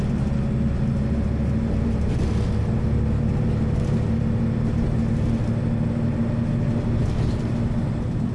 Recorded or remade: recorded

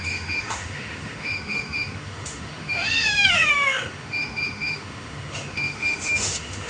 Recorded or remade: remade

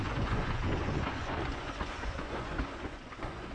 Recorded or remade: remade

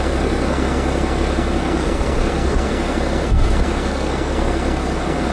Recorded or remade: remade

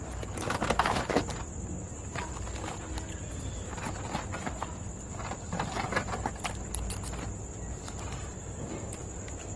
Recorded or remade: recorded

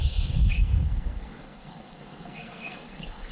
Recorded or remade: remade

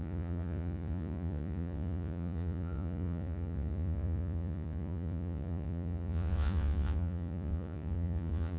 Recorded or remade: remade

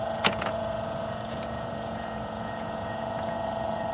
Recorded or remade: remade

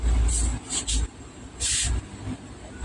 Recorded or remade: recorded